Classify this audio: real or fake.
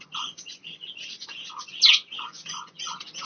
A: fake